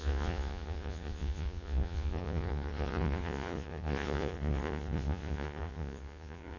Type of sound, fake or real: fake